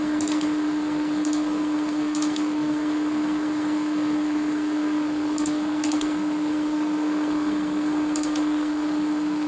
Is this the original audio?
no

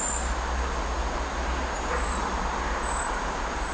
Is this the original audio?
yes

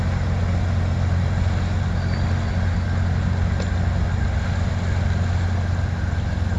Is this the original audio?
yes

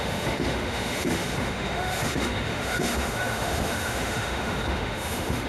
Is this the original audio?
no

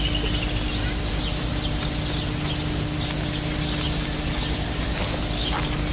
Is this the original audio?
yes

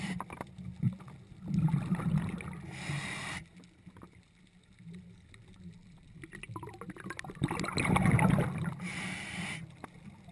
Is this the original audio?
yes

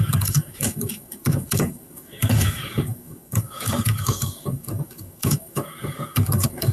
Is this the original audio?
no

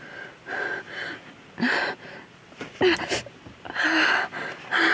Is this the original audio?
yes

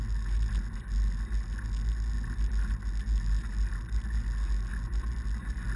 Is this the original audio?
yes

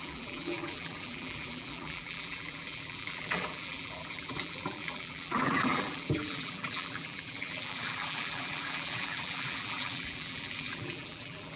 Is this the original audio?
no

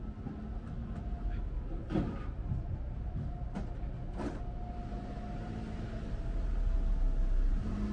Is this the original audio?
yes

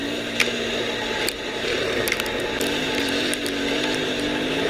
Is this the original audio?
yes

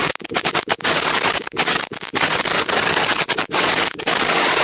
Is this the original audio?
no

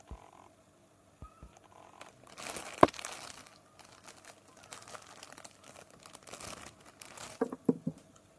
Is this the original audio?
yes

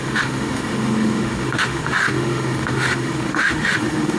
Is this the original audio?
no